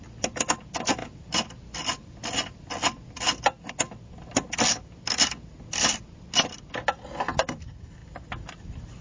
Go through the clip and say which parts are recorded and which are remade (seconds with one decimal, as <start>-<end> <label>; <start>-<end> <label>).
0.0-9.0 recorded

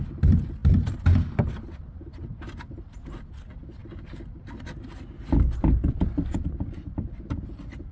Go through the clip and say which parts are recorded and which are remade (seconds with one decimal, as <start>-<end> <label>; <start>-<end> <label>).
0.0-7.9 recorded

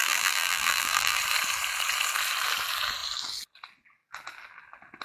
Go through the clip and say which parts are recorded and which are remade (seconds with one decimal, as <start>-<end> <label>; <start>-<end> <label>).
0.0-1.2 remade; 1.2-5.0 recorded

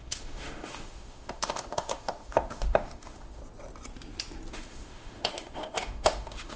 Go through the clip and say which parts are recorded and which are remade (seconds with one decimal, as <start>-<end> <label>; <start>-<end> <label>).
0.0-3.4 remade; 3.4-4.5 recorded; 4.5-6.6 remade